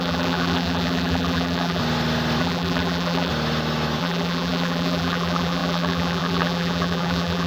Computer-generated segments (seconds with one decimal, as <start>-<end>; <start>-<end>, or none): 0.0-1.8; 2.4-3.3; 4.0-7.5